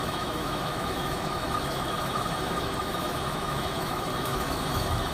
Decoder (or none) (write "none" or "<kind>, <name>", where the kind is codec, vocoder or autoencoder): autoencoder, DAC-VAE